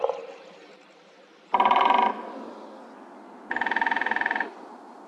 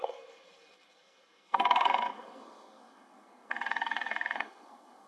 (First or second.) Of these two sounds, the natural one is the first